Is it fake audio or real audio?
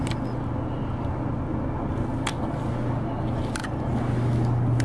real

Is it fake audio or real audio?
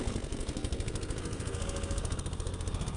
fake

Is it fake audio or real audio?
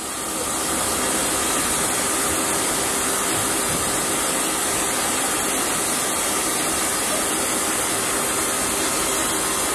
real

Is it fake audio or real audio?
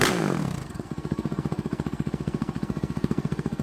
fake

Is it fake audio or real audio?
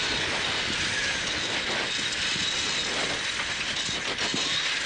real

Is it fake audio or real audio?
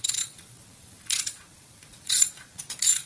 fake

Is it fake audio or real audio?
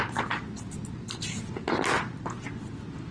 real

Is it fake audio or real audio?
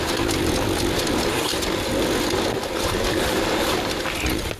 real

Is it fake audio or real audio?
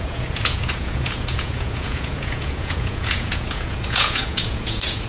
fake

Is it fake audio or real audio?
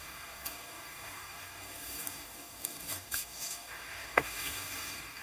fake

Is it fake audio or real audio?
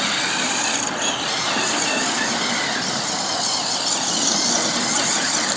real